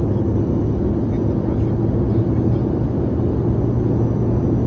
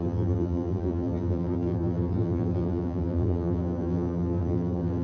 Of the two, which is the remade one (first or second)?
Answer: second